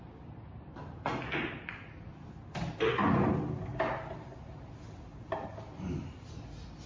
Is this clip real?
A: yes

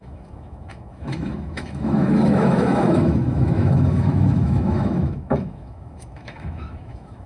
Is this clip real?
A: no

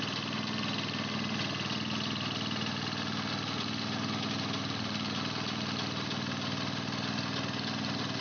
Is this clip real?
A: yes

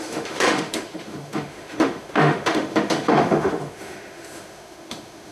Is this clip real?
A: no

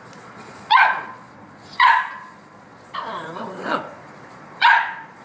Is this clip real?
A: no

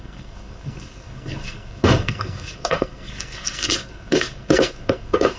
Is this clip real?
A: no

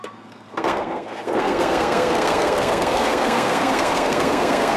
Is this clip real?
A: no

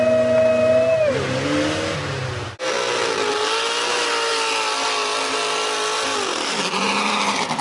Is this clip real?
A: yes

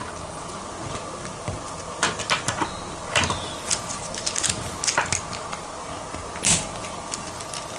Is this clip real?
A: yes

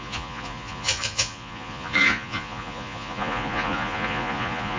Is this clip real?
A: no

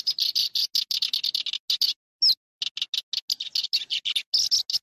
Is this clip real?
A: yes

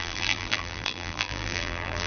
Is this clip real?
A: no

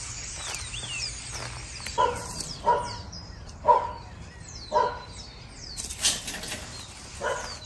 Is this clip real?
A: yes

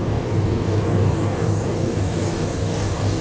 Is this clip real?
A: no